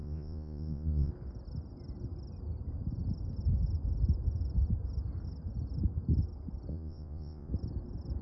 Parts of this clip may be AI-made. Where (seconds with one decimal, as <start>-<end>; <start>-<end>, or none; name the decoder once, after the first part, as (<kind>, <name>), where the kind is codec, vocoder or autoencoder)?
0.0-1.1 (vocoder, Vocos); 6.7-7.5